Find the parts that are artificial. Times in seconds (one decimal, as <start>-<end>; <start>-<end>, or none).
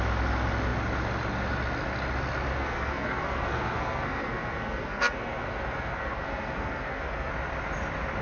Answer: 2.5-7.3